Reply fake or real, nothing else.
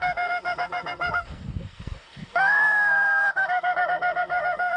fake